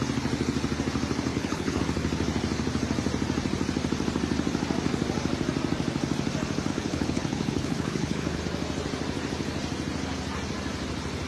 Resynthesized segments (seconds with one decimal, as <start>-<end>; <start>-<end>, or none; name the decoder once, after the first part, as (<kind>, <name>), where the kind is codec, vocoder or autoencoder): 1.3-1.8 (codec, HILCodec); 6.7-8.4